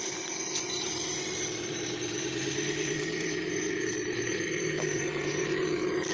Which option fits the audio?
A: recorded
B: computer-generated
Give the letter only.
B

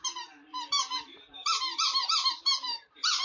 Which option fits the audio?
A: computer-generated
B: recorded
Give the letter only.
A